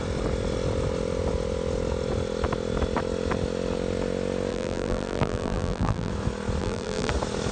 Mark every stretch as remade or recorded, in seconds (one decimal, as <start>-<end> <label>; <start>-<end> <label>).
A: 0.0-4.5 recorded; 4.5-6.1 remade; 6.1-6.6 recorded; 6.6-7.1 remade; 7.1-7.5 recorded